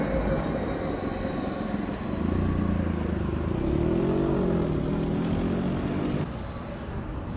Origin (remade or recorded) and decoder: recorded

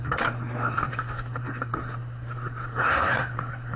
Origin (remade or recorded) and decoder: remade, codec, SNAC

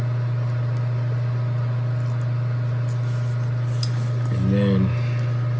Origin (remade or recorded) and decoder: recorded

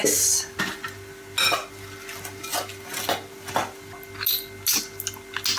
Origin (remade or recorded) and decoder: recorded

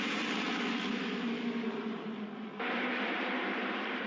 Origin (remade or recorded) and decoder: remade, vocoder, BigVGAN v2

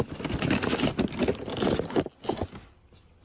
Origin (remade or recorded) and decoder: recorded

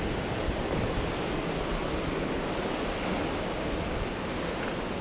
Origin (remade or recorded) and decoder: recorded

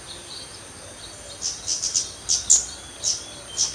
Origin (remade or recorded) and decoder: recorded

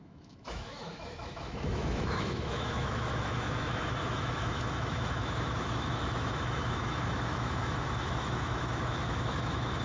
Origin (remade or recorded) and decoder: remade, autoencoder, DAC-VAE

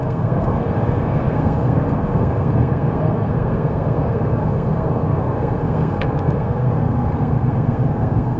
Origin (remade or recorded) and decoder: remade, codec, SNAC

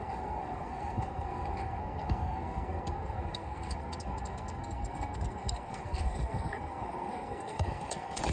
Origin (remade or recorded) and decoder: remade, codec, SNAC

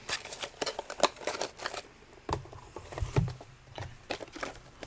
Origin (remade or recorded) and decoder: recorded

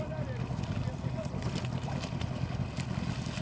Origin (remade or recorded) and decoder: recorded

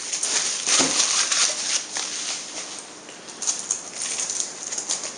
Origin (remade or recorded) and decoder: recorded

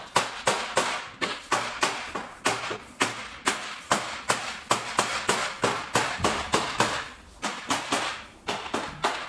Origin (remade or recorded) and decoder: recorded